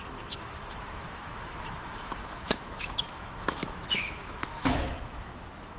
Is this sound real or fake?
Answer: fake